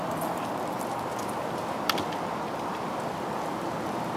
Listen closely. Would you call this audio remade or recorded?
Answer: recorded